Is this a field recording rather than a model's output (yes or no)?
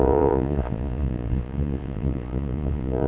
no